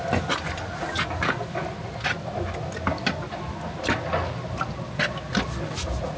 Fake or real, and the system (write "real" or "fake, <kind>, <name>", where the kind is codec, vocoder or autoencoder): real